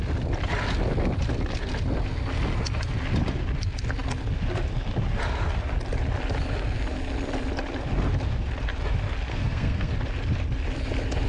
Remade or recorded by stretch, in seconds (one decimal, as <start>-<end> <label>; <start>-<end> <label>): 0.0-9.3 recorded; 9.3-9.9 remade; 9.9-11.3 recorded